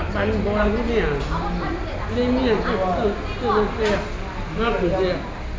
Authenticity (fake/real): real